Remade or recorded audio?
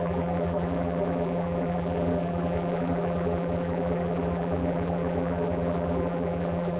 remade